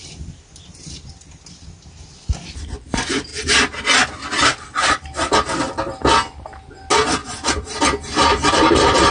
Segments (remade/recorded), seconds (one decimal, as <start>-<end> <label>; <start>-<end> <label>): 0.0-3.3 recorded; 3.3-3.8 remade; 3.8-7.2 recorded; 7.2-7.8 remade; 7.8-8.3 recorded; 8.3-9.1 remade